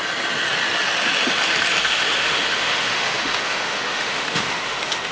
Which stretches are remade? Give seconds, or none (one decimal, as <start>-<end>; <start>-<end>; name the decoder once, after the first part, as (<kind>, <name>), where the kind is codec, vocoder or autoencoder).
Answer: 1.8-5.1 (autoencoder, DAC-VAE)

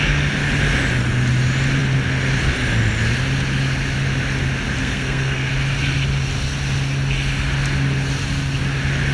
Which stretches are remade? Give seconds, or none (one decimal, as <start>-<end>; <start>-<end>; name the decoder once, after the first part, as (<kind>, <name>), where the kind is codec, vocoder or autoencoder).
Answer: 4.8-5.5 (codec, SNAC)